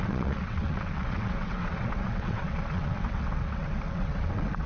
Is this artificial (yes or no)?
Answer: yes